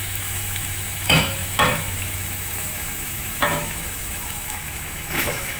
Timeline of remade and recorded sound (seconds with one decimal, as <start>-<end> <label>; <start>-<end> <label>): 0.0-5.6 remade